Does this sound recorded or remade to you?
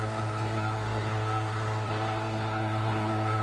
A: remade